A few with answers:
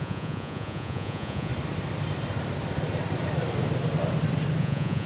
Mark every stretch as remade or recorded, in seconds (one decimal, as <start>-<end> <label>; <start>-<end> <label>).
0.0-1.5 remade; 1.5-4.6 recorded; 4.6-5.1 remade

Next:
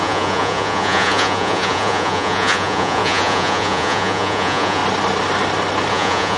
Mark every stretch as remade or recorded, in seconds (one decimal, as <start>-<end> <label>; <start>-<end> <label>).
0.0-4.8 remade; 4.8-5.9 recorded; 5.9-6.4 remade

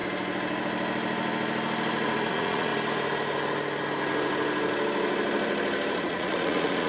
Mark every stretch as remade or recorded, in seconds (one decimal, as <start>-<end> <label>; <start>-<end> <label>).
0.0-2.3 recorded; 2.3-2.7 remade; 2.7-6.0 recorded; 6.0-6.9 remade

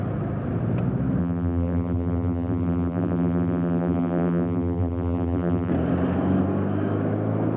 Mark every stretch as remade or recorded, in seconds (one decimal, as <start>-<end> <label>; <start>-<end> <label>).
0.0-1.2 recorded; 1.2-5.7 remade; 5.7-7.6 recorded

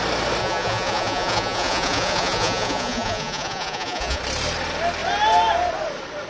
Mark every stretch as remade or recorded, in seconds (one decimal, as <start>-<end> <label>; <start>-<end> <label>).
0.0-0.4 recorded; 0.4-4.2 remade; 4.2-6.3 recorded

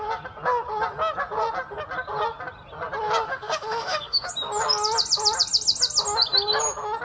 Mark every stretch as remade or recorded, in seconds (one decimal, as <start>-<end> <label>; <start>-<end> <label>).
0.0-3.3 recorded; 3.3-4.3 remade; 4.3-7.0 recorded

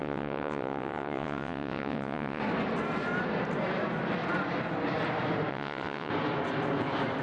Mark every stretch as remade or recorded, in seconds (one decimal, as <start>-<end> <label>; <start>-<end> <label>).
0.0-2.4 remade; 2.4-5.5 recorded; 5.5-6.1 remade; 6.1-7.2 recorded

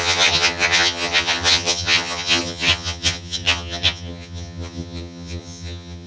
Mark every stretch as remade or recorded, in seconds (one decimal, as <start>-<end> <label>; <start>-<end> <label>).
0.0-6.1 remade